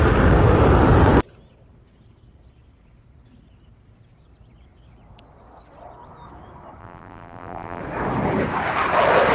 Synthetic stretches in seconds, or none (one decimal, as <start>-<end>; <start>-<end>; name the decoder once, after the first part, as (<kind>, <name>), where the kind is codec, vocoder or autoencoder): 6.8-7.8 (vocoder, BigVGAN v2)